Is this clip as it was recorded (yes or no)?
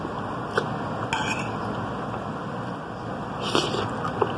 yes